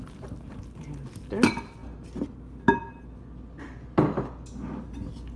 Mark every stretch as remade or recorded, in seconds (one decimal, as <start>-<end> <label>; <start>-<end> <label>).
0.0-5.4 recorded